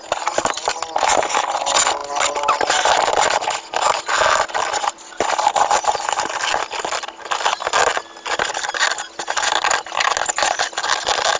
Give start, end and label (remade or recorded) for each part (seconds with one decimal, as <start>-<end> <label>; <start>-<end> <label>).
0.0-11.4 recorded